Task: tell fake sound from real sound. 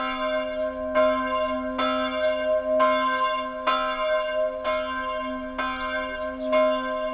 real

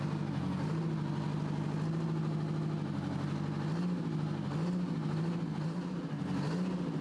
real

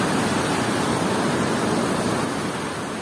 real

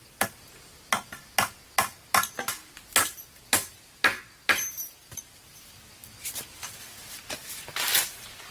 real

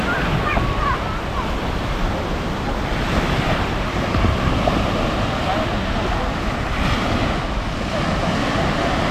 real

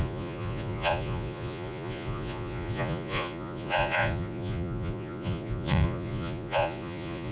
fake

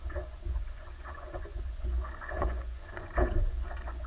fake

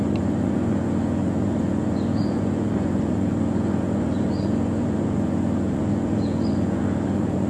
fake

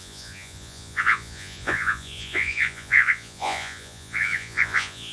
fake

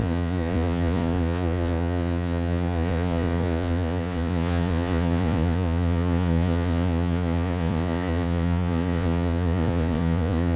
fake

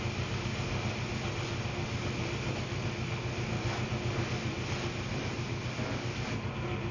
real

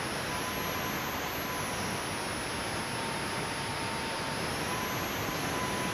real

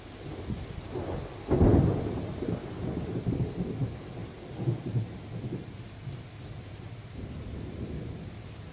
real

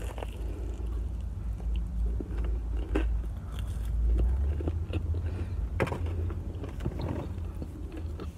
real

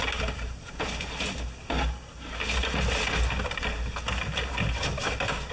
real